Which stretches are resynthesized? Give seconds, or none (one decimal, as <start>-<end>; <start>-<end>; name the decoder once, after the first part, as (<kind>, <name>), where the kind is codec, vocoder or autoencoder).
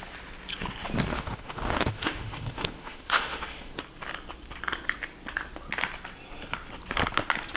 1.1-3.8 (autoencoder, DAC-VAE)